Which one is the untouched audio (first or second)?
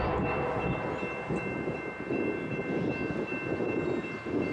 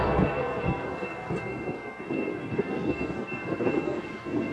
first